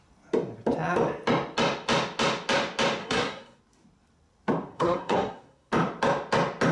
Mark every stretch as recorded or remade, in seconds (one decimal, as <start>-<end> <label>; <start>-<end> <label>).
0.0-3.0 recorded; 3.0-3.6 remade; 3.6-4.7 recorded; 4.7-5.7 remade; 5.7-6.7 recorded